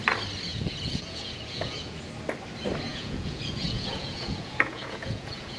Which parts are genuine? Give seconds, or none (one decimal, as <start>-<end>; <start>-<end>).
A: 0.0-0.5; 2.0-2.9